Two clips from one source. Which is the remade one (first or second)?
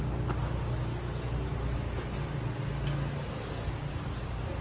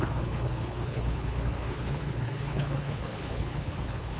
second